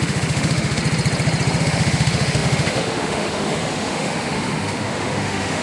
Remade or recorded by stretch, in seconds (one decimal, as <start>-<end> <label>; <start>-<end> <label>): 0.0-0.8 remade; 0.8-1.6 recorded; 1.6-5.6 remade